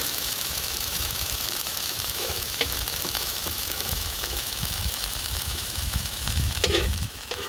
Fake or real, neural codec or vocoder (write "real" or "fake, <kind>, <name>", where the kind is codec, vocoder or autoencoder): fake, autoencoder, DAC-VAE